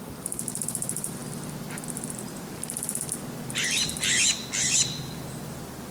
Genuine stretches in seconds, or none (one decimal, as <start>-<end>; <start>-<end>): none